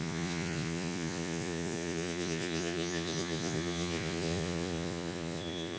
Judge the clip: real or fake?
fake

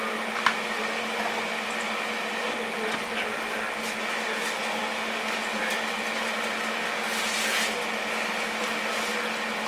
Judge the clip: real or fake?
real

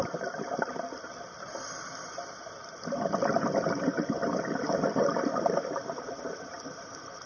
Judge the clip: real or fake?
real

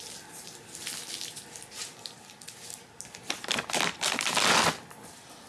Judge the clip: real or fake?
real